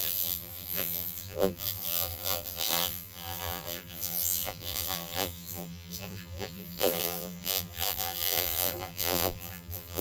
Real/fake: fake